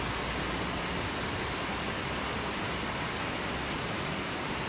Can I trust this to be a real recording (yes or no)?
yes